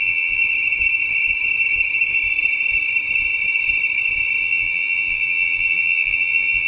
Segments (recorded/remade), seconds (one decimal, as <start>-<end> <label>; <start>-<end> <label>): 0.0-0.4 remade; 0.4-4.4 recorded; 4.4-6.7 remade

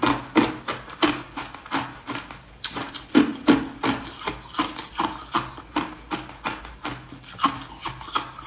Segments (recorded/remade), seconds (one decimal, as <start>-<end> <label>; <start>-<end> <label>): 0.0-8.5 recorded

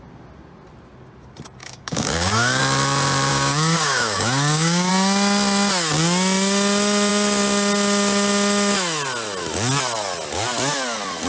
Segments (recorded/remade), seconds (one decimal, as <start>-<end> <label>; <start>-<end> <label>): 0.0-1.6 recorded; 1.6-2.6 remade; 2.6-3.3 recorded; 3.3-4.9 remade; 4.9-11.3 recorded

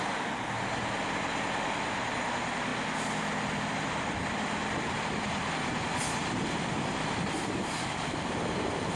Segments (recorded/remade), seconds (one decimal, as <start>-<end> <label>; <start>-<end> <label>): 0.0-9.0 recorded

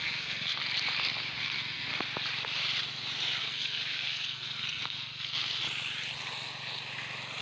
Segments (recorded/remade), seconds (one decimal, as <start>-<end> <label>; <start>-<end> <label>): 0.0-0.6 remade; 0.6-1.4 recorded; 1.4-1.9 remade; 1.9-3.4 recorded; 3.4-5.6 remade; 5.6-7.4 recorded

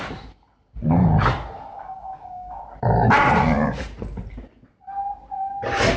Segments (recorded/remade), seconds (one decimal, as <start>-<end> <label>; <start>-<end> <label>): 0.0-1.7 recorded; 1.7-2.6 remade; 2.6-6.0 recorded

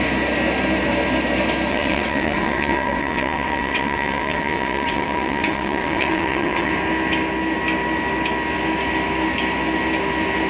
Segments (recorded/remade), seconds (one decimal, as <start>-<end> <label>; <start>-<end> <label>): 0.0-1.7 recorded; 1.7-6.7 remade; 6.7-10.5 recorded

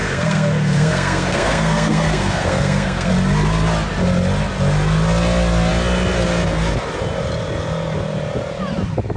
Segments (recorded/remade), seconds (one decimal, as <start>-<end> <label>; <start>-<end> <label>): 0.0-3.1 remade; 3.1-9.2 recorded